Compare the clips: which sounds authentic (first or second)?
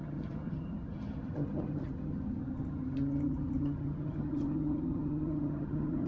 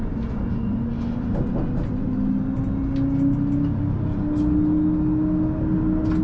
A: second